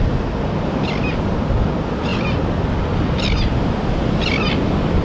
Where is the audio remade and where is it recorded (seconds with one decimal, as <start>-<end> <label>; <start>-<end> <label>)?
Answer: 0.0-5.0 recorded